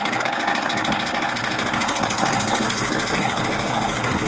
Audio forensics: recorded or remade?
remade